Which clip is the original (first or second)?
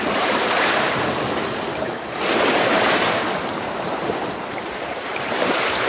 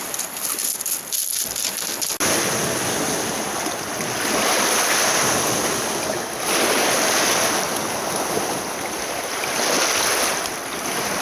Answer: second